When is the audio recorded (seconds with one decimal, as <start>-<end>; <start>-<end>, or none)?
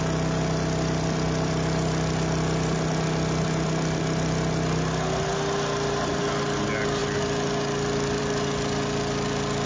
0.0-9.7